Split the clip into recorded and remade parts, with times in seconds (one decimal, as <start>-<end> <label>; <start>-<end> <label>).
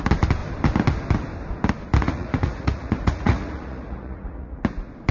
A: 0.0-2.0 recorded; 2.0-4.6 remade; 4.6-5.1 recorded